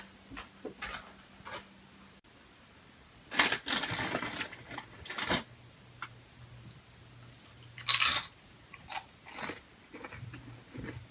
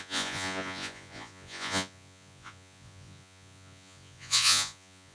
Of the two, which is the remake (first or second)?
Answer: second